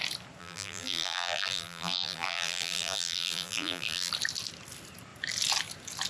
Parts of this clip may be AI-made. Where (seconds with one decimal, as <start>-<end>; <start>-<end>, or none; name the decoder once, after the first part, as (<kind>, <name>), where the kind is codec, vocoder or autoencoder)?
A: 0.4-4.1 (vocoder, BigVGAN v2)

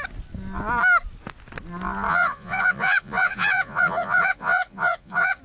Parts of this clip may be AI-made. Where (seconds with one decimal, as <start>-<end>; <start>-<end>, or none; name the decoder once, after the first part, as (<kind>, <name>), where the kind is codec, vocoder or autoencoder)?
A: 2.1-5.4 (vocoder, Vocos)